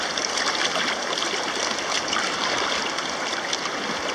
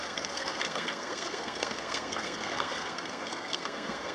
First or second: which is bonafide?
first